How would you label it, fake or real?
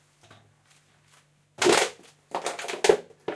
real